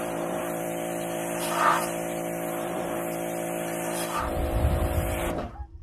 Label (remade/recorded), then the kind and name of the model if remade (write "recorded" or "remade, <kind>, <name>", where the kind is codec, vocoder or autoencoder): remade, vocoder, BigVGAN v2